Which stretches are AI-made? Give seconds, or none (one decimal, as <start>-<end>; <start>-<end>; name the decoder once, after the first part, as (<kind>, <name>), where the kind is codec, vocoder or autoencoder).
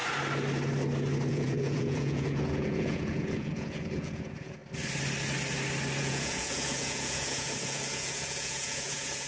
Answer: 1.3-4.6 (vocoder, Vocos); 6.0-9.3